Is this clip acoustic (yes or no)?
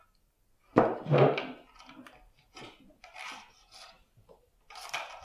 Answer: yes